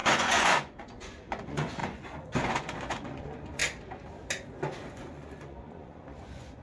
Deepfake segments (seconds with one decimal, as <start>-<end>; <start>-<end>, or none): 0.0-3.6; 4.9-6.6